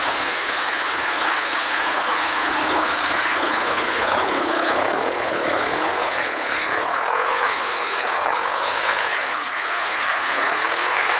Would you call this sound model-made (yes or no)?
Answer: yes